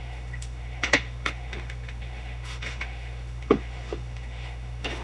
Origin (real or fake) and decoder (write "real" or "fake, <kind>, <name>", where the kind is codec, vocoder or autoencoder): fake, autoencoder, DAC-VAE